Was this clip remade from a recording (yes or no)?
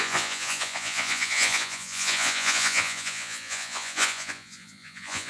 yes